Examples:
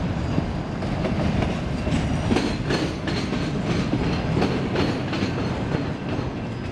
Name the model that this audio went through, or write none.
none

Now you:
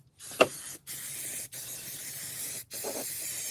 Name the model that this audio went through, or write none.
vocoder, BigVGAN v2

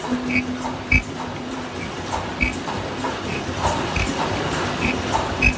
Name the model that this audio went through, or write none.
none